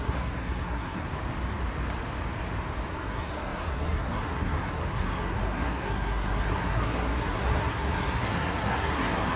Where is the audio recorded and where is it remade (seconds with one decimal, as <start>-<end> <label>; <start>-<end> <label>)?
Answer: 0.0-1.0 remade; 1.0-2.9 recorded; 2.9-9.4 remade